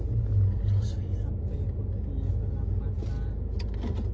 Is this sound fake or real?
real